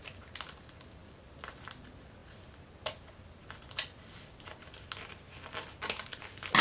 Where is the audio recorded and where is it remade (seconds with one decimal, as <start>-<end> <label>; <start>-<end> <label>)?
0.0-6.6 recorded